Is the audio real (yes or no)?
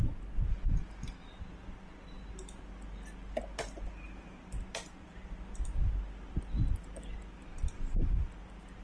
yes